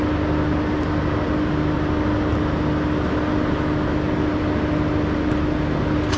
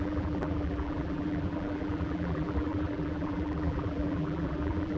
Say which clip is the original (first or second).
first